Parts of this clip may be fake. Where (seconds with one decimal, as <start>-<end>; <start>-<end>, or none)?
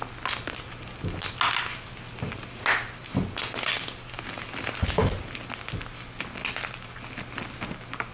none